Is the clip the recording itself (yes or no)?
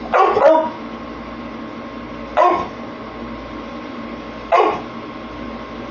yes